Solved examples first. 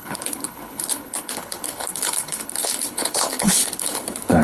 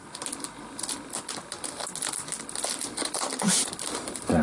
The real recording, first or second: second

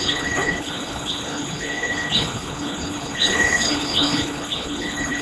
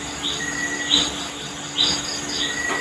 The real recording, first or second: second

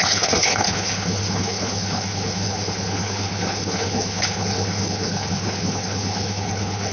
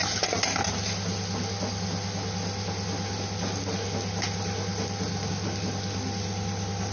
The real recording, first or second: second